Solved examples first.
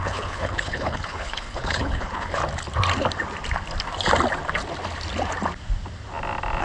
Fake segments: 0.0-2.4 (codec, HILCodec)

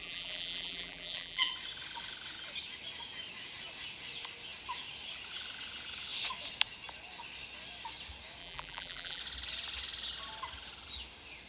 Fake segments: 0.0-1.5 (vocoder, BigVGAN v2); 8.4-9.2

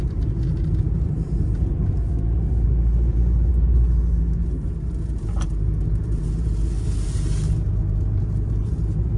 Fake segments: 0.0-3.5 (vocoder, BigVGAN v2); 4.4-9.2

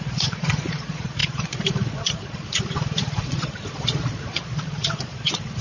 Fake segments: 0.0-5.6 (vocoder, Vocos)

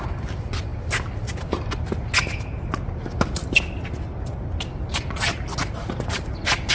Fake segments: none

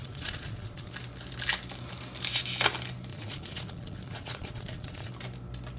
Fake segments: 0.0-0.9 (vocoder, Vocos); 3.1-5.1

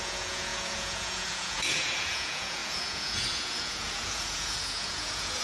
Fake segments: 0.0-5.4 (vocoder, Vocos)

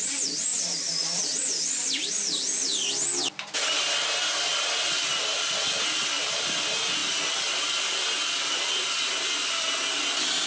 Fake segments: 0.5-1.6 (vocoder, BigVGAN v2)